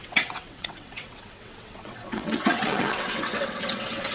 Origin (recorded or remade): remade